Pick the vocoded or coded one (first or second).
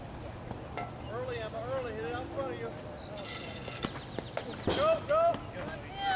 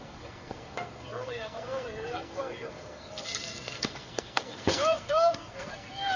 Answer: second